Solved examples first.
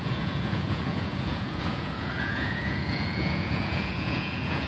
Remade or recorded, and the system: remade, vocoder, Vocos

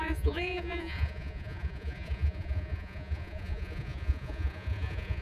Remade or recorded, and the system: remade, vocoder, Vocos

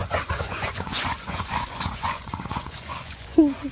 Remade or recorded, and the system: remade, vocoder, Vocos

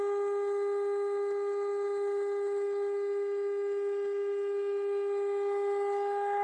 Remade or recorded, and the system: recorded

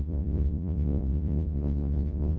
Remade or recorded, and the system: remade, vocoder, Vocos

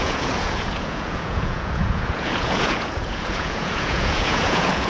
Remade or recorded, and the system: remade, vocoder, Vocos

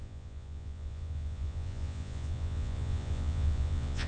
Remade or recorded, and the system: remade, vocoder, Vocos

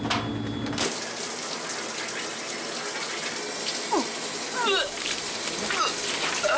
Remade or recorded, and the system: recorded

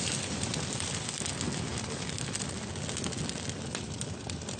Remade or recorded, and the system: recorded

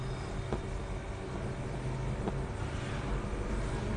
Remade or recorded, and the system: recorded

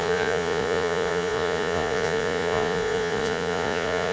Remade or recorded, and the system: remade, vocoder, Vocos